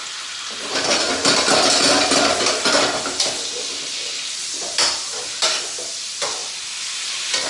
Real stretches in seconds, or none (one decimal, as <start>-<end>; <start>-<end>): 0.0-7.5